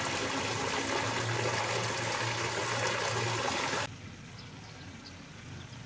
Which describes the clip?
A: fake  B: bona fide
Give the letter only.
B